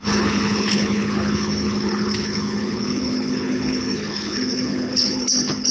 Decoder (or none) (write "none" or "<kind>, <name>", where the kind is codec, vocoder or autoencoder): codec, HILCodec